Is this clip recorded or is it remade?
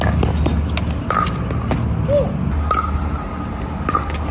recorded